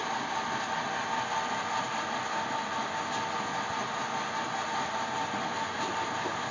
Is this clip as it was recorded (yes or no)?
yes